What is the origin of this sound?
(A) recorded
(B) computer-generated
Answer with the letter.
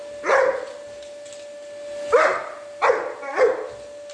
A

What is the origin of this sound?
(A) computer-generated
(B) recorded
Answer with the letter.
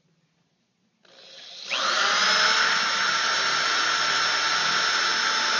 B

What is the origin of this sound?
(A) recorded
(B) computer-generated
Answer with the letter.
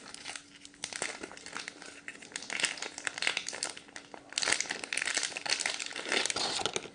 A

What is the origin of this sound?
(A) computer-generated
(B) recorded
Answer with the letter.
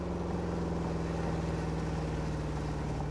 B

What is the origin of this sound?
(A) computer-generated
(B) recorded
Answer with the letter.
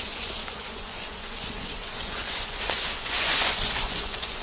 A